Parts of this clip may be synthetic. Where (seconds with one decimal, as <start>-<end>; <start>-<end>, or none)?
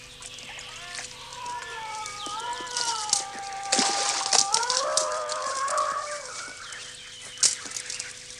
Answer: 1.3-3.1; 4.5-6.6